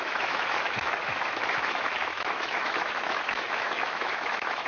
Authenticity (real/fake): fake